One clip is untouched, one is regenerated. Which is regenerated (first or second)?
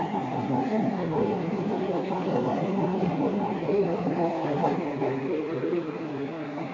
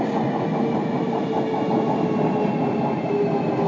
first